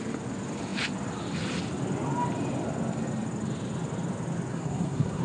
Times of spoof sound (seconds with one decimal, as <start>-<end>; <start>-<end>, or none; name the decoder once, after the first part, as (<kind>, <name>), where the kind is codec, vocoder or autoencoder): 4.5-5.2 (codec, SNAC)